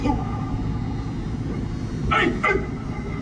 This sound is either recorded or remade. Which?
recorded